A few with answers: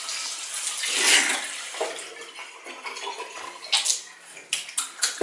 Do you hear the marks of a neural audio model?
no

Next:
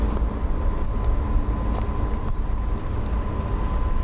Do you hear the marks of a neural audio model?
no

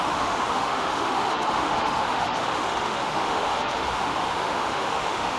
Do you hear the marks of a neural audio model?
yes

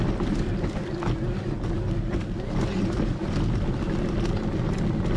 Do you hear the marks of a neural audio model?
no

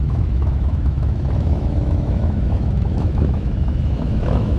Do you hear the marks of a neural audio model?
yes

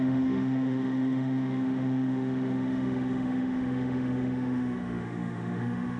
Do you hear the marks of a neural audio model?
yes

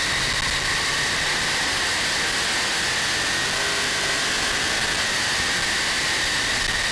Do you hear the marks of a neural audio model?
no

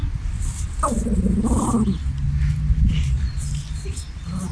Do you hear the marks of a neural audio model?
no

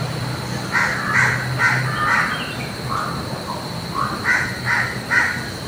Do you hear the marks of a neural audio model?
no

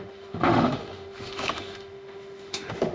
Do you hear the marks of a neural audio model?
yes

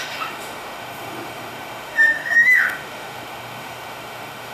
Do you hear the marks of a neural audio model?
yes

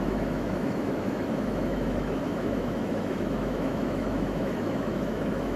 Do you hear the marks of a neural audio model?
yes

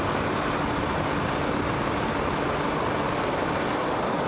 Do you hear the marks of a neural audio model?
no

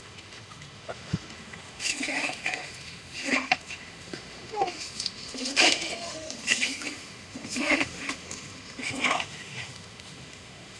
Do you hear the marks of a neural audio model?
yes